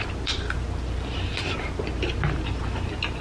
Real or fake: fake